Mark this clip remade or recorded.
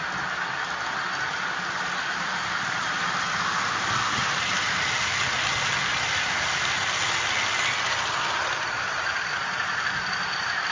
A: recorded